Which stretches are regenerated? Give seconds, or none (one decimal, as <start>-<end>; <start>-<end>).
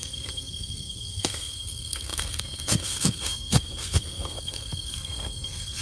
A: 0.0-5.8